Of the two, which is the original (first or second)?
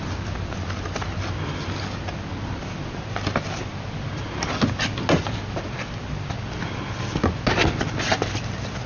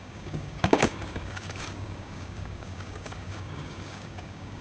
first